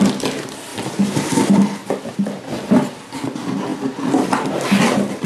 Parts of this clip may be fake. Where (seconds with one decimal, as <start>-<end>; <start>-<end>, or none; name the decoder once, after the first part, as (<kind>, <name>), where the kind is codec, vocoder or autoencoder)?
0.7-3.1 (vocoder, BigVGAN v2); 3.7-5.3